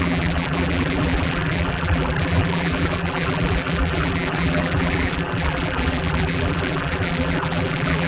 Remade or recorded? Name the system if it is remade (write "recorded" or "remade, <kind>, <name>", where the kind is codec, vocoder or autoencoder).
remade, vocoder, BigVGAN v2